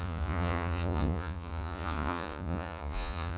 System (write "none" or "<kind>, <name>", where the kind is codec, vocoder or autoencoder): vocoder, Vocos